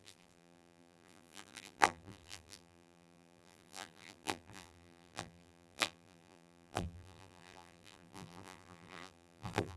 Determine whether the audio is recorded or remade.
remade